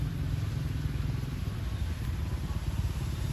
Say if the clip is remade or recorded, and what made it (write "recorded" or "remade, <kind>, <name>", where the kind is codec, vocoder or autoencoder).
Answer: recorded